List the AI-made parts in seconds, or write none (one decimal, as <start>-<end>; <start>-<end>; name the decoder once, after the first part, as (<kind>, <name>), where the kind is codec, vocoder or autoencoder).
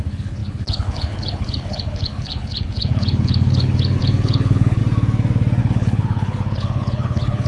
0.0-4.8 (codec, HILCodec); 5.6-7.5